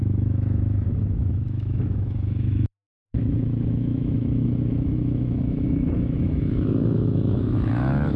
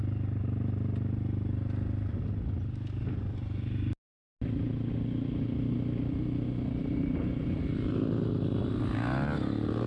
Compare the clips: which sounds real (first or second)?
second